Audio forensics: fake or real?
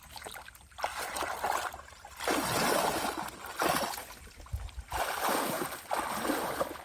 real